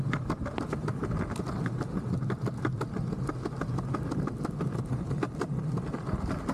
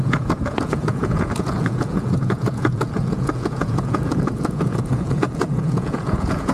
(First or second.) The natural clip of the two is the first